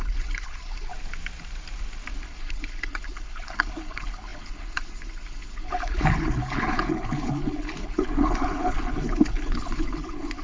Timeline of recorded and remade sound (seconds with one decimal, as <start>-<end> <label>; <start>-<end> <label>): 0.0-0.9 remade; 0.9-2.2 recorded; 2.2-10.4 remade